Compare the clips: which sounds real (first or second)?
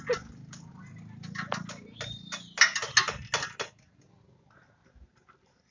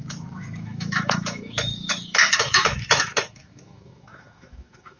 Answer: first